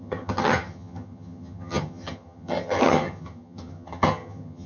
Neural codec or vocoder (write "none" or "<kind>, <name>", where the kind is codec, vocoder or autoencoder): vocoder, HiFi-GAN